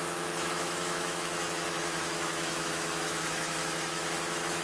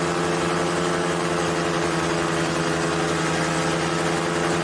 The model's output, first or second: first